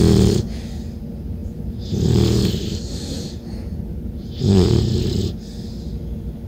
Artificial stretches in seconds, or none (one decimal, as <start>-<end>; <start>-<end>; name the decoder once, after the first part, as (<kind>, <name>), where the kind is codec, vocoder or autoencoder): 1.4-5.3 (vocoder, BigVGAN v2)